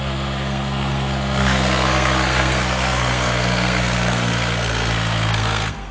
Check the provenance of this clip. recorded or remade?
remade